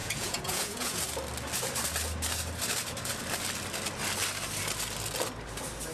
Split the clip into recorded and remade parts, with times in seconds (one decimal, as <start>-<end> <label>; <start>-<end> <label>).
0.0-1.0 remade; 1.0-5.9 recorded